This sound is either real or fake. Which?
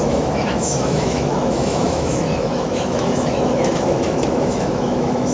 fake